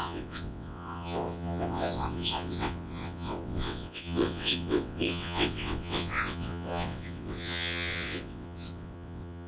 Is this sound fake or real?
fake